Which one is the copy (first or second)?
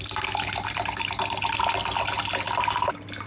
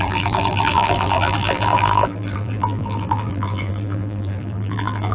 second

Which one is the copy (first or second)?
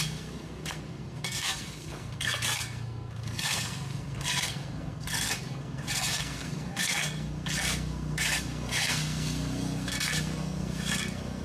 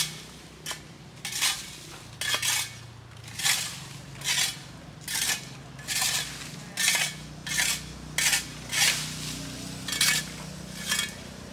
first